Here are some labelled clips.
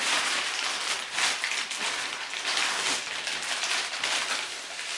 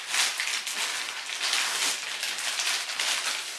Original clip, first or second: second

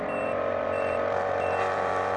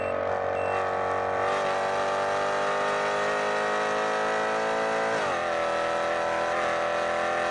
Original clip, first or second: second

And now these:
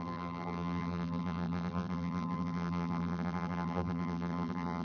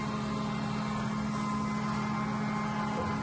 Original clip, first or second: second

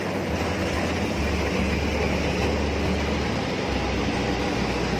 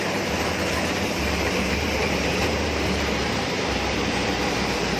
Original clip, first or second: first